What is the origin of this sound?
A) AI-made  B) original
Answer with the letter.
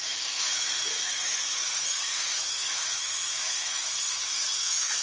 A